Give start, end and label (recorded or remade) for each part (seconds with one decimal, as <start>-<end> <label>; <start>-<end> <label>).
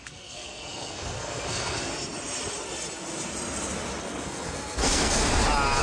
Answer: 0.0-1.9 remade; 1.9-4.0 recorded; 4.0-5.2 remade; 5.2-5.8 recorded